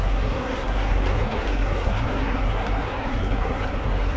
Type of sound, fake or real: fake